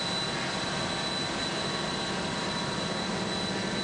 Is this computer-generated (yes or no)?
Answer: no